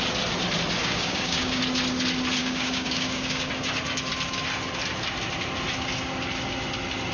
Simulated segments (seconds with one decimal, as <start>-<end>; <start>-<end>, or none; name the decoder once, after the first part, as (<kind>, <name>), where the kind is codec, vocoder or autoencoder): 0.8-1.6 (codec, DAC); 2.4-3.5